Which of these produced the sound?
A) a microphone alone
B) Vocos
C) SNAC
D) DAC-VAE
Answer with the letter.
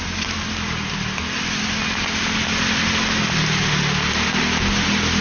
A